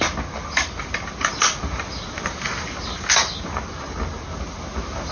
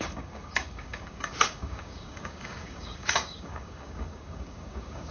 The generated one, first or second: second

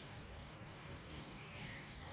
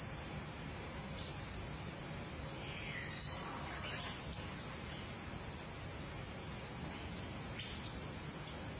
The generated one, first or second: first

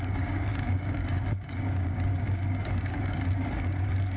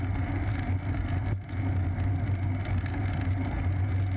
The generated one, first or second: first